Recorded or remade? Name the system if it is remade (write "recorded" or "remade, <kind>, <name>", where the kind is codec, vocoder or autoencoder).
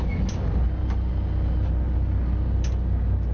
recorded